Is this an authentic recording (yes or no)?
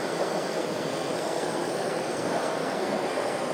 no